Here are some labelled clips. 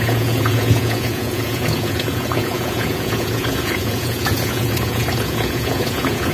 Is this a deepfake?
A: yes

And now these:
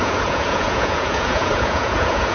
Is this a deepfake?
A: yes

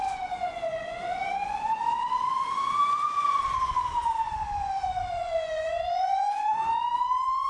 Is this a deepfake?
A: yes